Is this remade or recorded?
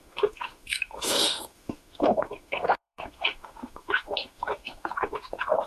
remade